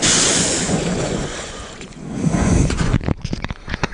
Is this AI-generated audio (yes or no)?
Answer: yes